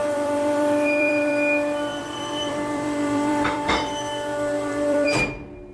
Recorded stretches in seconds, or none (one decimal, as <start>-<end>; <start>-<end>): 1.3-1.9; 5.3-5.7